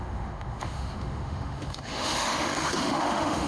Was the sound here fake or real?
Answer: fake